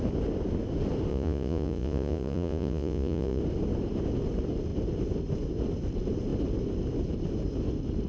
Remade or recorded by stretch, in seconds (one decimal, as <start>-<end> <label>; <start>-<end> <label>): 0.0-1.1 recorded; 1.1-3.4 remade; 3.4-8.1 recorded